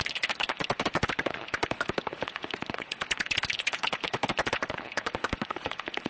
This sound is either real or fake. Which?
fake